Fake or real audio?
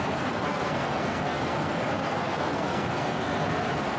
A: fake